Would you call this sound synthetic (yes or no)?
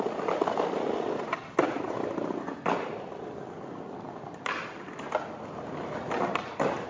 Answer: no